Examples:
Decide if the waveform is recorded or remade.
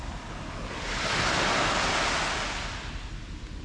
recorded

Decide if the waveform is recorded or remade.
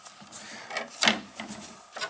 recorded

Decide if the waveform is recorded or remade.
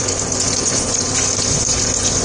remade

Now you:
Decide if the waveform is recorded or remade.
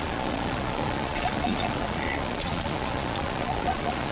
remade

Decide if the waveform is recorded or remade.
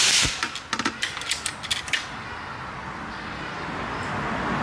recorded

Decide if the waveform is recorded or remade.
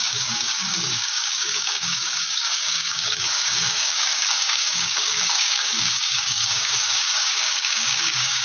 remade